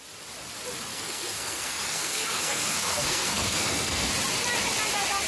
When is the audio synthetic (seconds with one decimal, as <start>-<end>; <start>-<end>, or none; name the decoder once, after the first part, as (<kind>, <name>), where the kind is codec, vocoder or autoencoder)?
0.9-4.1 (codec, SNAC)